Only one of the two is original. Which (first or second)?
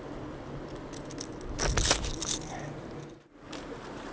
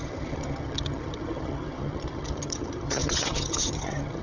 first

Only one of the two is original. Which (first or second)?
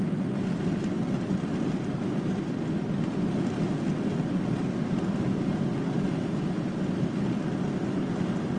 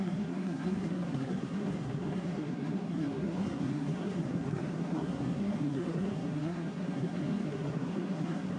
first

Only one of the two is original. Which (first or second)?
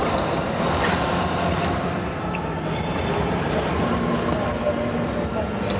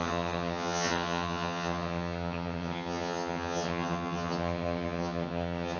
first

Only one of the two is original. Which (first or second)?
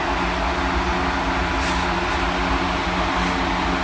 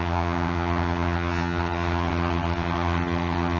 first